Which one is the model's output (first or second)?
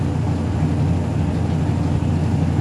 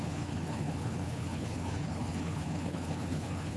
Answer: second